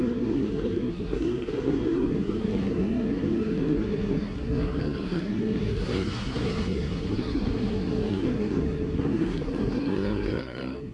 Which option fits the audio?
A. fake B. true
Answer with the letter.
A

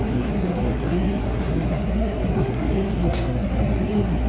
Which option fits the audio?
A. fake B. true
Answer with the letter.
A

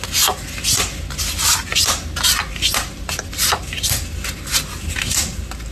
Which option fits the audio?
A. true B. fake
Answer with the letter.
A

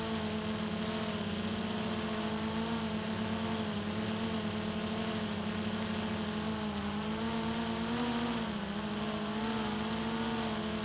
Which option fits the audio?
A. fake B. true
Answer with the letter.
B